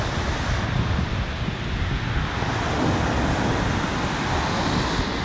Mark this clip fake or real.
real